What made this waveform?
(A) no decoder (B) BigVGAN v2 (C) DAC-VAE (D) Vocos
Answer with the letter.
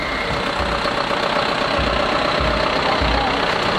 A